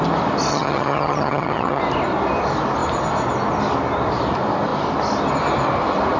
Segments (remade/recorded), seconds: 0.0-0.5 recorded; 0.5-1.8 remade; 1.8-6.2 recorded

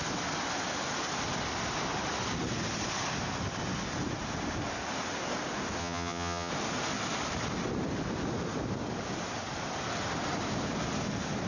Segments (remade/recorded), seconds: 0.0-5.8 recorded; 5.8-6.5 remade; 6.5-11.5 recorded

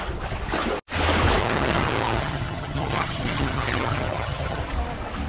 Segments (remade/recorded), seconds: 0.0-1.4 recorded; 1.4-4.6 remade; 4.6-5.3 recorded